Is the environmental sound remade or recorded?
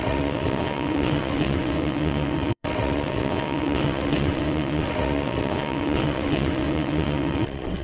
remade